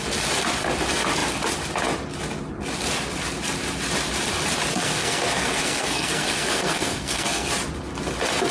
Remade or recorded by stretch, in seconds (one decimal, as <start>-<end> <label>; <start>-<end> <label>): 0.0-4.7 recorded; 4.7-7.5 remade; 7.5-8.5 recorded